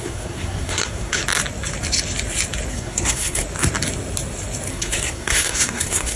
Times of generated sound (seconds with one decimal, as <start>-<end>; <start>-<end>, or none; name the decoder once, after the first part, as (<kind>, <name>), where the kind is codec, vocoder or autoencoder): 0.0-1.2 (codec, SNAC); 2.7-3.4; 4.7-6.2